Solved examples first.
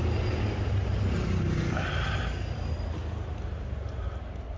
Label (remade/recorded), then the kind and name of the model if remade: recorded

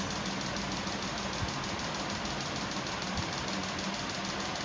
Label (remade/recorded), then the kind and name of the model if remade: recorded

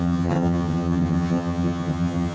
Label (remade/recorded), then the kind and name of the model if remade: remade, vocoder, HiFi-GAN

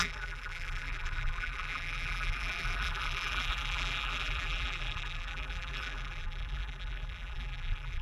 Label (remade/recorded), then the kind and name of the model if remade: remade, vocoder, BigVGAN v2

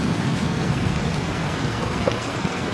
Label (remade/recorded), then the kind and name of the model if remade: remade, codec, SNAC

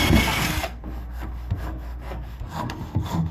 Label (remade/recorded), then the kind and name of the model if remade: remade, codec, SNAC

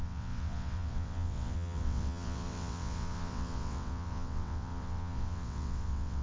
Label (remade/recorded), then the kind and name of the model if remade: remade, vocoder, WaveNeXt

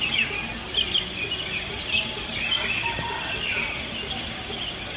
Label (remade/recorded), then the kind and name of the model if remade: recorded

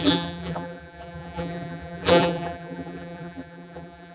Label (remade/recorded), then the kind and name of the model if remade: remade, vocoder, BigVGAN v2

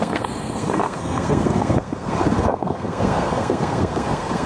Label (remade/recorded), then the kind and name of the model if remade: remade, codec, SNAC